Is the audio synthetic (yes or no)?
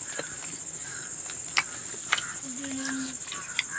no